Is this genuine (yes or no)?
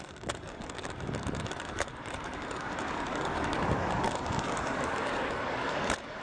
no